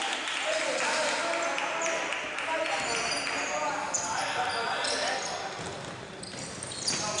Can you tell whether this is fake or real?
real